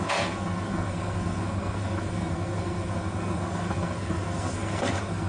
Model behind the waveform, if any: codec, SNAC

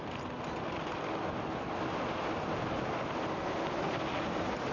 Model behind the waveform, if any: none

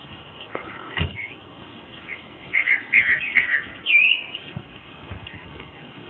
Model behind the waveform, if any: codec, SNAC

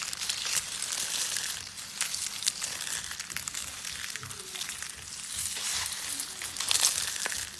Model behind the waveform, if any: none